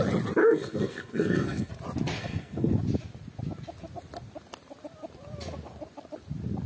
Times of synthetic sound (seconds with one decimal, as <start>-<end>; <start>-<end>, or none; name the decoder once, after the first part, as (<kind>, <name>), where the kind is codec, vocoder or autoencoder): 0.4-1.7 (codec, SNAC); 2.2-2.7